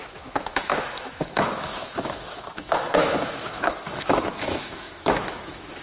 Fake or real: fake